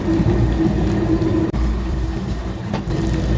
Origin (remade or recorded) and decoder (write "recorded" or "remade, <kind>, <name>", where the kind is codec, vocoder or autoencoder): recorded